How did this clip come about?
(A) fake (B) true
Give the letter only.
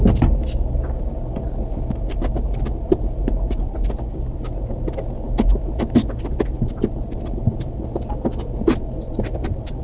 B